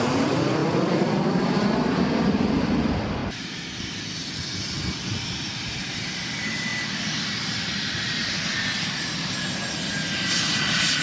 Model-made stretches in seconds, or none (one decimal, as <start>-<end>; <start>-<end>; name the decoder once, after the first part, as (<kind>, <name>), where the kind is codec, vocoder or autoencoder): 0.0-3.2 (vocoder, BigVGAN v2); 3.8-6.7